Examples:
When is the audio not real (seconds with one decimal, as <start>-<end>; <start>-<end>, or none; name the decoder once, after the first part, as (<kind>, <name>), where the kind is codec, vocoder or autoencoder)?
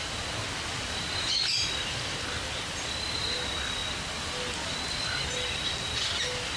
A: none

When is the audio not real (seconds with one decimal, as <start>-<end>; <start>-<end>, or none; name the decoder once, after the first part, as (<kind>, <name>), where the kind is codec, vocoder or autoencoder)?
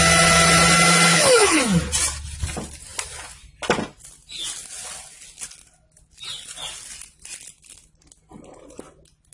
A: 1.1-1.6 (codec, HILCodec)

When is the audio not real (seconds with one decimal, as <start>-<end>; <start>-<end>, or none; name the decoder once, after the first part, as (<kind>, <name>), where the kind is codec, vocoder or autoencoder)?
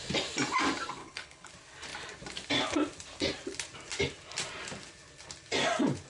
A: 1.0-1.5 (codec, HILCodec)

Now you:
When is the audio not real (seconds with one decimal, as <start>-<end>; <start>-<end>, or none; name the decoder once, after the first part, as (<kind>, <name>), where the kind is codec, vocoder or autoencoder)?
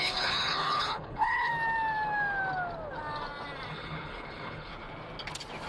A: 0.0-1.5 (codec, HILCodec); 3.7-4.7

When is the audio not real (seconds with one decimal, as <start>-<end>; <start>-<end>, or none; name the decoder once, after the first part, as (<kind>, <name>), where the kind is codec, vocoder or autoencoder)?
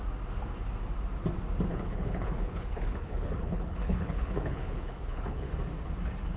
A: 1.7-5.5 (codec, HILCodec)